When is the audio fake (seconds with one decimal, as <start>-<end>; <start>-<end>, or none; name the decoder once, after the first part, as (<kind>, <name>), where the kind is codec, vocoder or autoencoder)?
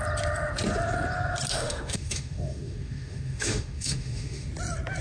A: 1.5-4.5 (autoencoder, DAC-VAE)